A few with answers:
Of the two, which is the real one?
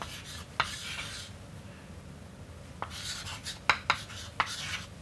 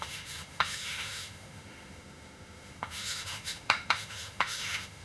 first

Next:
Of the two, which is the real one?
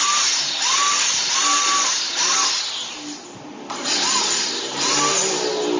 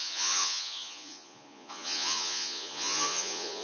first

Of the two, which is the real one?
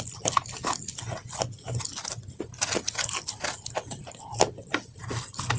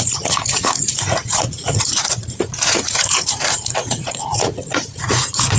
first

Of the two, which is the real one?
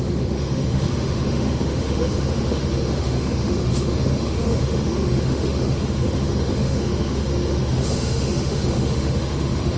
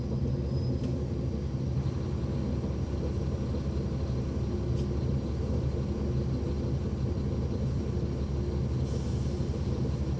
second